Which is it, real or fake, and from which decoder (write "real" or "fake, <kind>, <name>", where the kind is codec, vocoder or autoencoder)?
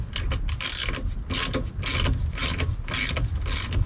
real